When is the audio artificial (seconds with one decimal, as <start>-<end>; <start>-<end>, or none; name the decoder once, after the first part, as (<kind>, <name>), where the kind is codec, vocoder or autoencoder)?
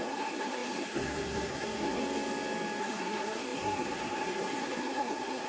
0.0-2.0 (codec, SNAC); 2.8-5.5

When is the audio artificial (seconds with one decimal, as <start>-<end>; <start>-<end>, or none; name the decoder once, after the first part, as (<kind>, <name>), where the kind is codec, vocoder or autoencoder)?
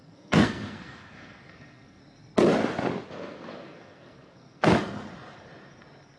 0.0-2.0 (codec, SNAC); 3.1-4.7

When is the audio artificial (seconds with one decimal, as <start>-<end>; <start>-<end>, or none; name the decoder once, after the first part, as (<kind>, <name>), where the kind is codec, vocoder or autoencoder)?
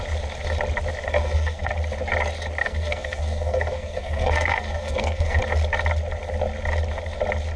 1.0-1.7 (codec, SNAC); 2.6-5.4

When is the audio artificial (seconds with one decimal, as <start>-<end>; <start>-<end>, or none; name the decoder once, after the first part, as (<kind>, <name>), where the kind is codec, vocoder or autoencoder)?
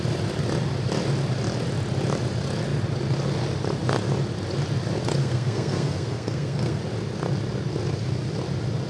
5.2-6.8 (codec, SNAC)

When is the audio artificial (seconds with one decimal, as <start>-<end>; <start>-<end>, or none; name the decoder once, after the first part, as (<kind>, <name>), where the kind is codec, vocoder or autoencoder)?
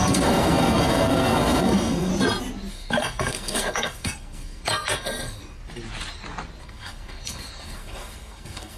0.0-2.1 (codec, SNAC); 2.7-5.6; 6.6-8.8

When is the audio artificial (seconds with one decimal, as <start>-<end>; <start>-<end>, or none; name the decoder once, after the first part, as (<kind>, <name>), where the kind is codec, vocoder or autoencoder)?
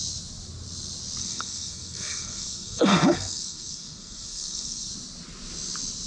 1.2-4.9 (codec, SNAC)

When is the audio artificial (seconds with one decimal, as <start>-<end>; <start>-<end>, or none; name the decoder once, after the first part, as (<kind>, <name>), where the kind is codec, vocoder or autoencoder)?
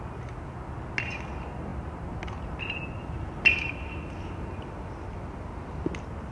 none